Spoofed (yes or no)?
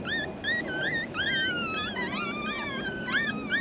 no